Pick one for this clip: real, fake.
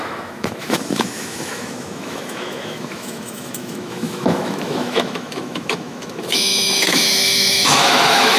fake